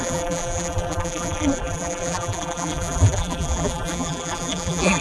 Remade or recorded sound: remade